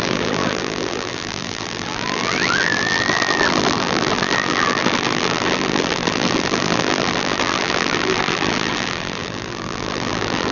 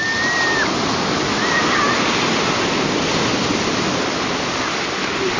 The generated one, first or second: first